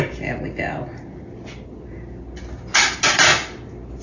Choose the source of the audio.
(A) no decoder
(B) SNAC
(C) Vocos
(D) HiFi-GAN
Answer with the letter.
A